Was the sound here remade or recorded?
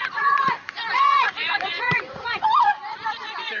remade